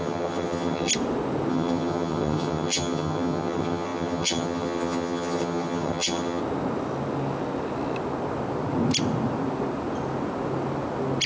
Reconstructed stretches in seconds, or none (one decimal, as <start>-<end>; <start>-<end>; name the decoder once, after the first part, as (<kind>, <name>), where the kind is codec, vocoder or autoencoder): 0.0-0.9 (vocoder, HiFi-GAN); 1.5-6.4

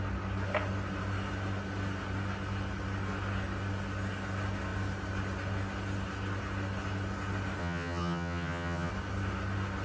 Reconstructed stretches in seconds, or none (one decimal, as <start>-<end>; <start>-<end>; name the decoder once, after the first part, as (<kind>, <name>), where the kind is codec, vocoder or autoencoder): 7.6-8.9 (vocoder, HiFi-GAN)